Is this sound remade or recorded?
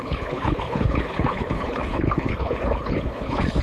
remade